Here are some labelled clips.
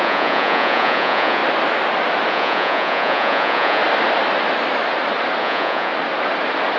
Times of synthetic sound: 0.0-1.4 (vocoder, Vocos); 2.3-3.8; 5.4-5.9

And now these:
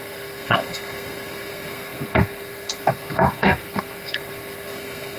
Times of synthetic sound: 0.0-5.2 (codec, SNAC)